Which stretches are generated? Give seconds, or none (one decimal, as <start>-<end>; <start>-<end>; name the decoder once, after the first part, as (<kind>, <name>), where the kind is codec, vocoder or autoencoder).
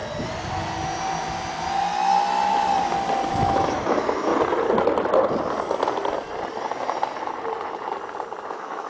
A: 3.3-4.3 (autoencoder, DAC-VAE); 8.5-8.9